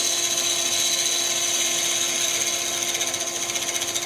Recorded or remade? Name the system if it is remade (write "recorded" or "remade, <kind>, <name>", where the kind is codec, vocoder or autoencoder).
recorded